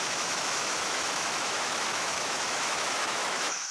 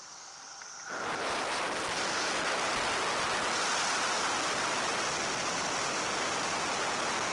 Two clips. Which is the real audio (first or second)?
second